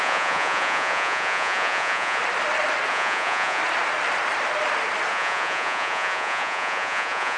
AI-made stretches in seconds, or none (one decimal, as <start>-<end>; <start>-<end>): 0.0-2.2; 2.9-3.6; 5.1-7.4